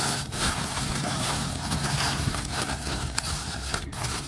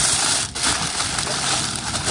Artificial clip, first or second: first